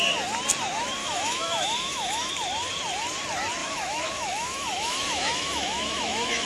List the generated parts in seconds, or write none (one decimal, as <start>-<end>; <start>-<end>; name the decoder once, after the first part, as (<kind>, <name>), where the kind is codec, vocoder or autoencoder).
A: 1.0-2.3 (autoencoder, DAC-VAE); 3.6-6.5